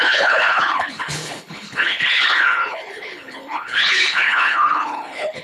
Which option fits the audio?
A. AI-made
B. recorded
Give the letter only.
A